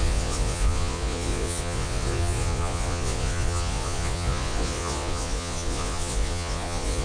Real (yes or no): no